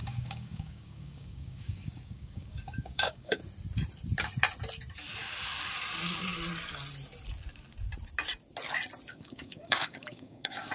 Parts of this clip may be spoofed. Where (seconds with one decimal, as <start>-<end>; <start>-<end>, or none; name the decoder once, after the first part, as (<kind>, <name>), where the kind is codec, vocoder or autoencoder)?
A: 0.0-3.4 (codec, DAC); 9.1-10.7